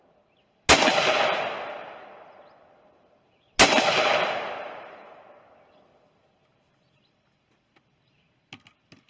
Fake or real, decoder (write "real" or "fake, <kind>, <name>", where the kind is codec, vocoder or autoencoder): real